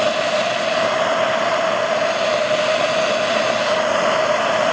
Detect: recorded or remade recorded